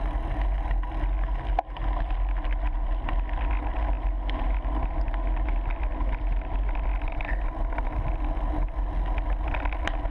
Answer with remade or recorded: recorded